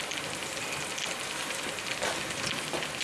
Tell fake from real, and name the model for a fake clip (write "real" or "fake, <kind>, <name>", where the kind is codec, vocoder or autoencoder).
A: fake, vocoder, BigVGAN v2